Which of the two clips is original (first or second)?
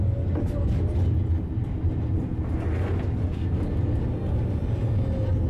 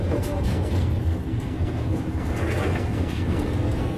first